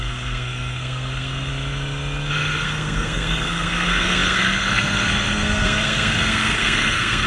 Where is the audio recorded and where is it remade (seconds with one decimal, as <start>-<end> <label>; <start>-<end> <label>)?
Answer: 0.0-1.5 remade; 1.5-2.3 recorded; 2.3-7.3 remade